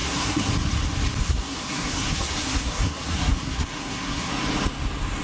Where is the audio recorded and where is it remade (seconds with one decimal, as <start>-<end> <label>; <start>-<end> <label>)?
0.0-0.5 remade; 0.5-1.2 recorded; 1.2-4.3 remade; 4.3-5.2 recorded